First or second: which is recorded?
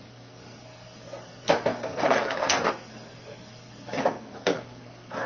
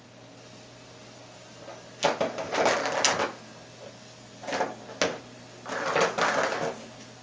second